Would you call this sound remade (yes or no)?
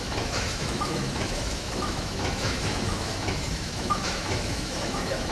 yes